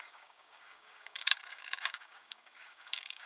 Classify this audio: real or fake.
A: fake